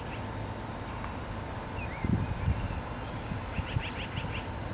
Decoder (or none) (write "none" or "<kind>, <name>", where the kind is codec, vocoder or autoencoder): none